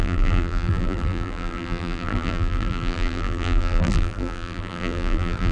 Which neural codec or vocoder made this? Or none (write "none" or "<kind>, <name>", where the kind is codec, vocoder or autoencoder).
vocoder, BigVGAN v2